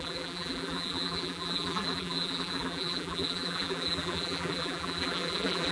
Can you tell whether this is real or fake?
fake